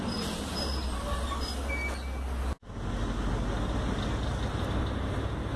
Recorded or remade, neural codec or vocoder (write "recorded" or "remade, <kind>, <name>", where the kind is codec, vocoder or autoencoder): recorded